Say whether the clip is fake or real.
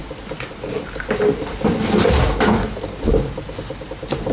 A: real